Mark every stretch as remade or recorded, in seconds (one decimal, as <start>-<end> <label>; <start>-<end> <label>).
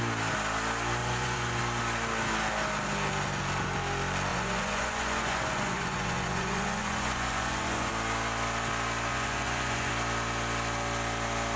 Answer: 0.0-1.0 recorded; 1.0-1.6 remade; 1.6-4.3 recorded; 4.3-7.9 remade; 7.9-9.1 recorded; 9.1-9.9 remade; 9.9-11.6 recorded